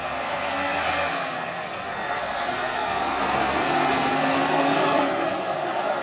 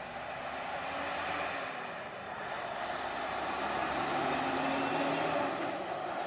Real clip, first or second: second